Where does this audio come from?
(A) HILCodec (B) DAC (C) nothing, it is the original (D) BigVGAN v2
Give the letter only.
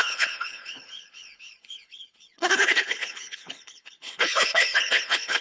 A